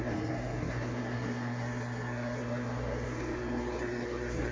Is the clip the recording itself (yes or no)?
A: no